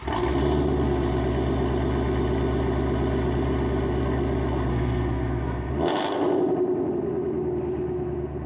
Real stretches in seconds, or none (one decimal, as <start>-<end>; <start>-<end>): 0.0-4.7; 5.7-8.5